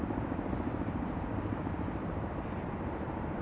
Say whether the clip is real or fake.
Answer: fake